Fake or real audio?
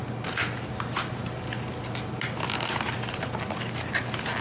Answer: real